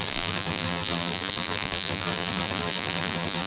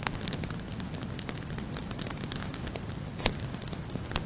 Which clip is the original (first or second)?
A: second